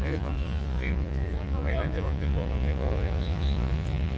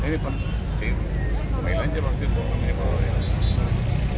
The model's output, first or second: first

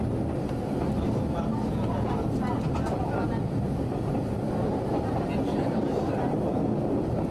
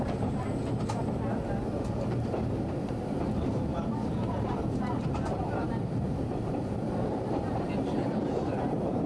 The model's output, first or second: second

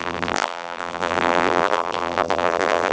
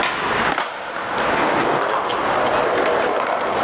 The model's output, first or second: first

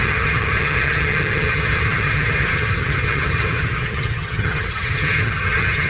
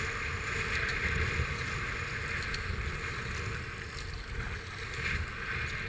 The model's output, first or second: first